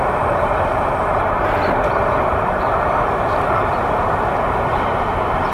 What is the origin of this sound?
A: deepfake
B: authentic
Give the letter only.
A